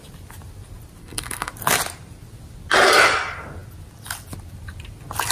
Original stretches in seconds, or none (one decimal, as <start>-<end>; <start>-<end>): 0.0-1.0; 1.5-5.3